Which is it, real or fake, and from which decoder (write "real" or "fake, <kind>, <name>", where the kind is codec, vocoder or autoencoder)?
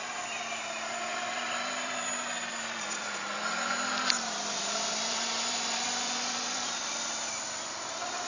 fake, vocoder, BigVGAN v2